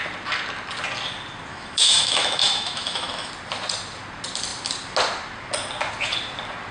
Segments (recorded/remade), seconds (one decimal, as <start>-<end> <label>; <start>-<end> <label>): 0.0-1.5 recorded; 1.5-3.3 remade; 3.3-6.7 recorded